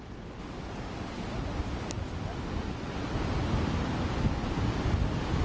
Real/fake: real